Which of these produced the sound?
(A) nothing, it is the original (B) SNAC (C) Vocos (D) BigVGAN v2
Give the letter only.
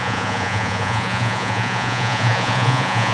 C